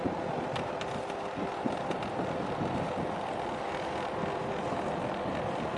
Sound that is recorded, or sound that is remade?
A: recorded